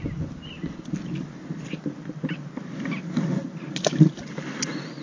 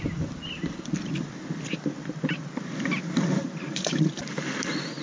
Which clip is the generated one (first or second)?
second